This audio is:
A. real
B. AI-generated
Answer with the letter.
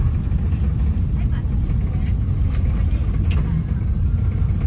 A